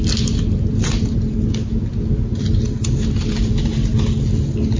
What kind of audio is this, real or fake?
real